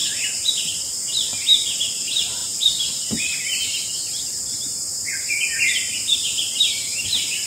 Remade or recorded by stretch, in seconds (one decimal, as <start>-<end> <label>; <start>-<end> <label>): 0.0-1.1 remade; 1.1-1.9 recorded; 1.9-2.4 remade; 2.4-6.6 recorded; 6.6-7.5 remade